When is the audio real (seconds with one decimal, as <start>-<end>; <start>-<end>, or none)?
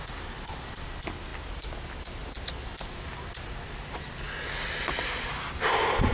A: 0.0-6.1